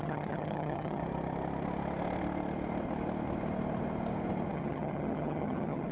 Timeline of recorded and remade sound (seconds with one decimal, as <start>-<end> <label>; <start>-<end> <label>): 0.0-1.0 remade; 1.0-4.5 recorded; 4.5-5.9 remade